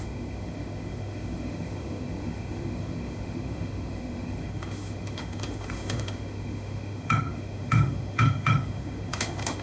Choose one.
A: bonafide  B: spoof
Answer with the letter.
B